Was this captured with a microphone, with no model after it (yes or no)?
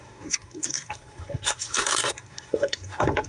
no